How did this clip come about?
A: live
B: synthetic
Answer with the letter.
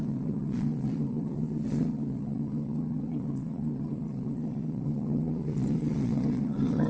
B